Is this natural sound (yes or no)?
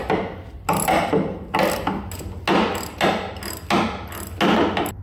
yes